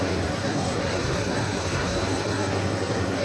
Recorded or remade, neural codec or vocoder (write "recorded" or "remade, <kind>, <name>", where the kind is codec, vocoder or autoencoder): remade, codec, SNAC